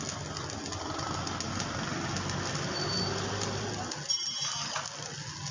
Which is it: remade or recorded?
recorded